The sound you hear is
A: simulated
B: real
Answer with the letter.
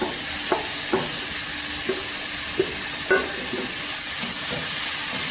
B